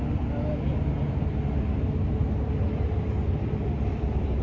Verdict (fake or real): real